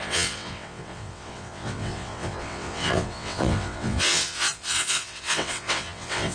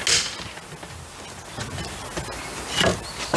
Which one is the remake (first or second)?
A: first